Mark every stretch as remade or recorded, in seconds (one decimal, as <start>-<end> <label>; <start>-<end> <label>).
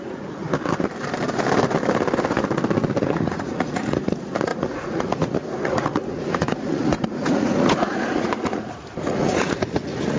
0.0-0.4 remade; 0.4-3.0 recorded; 3.0-10.2 remade